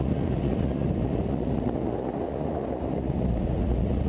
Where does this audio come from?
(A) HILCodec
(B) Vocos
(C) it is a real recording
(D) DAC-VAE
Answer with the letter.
B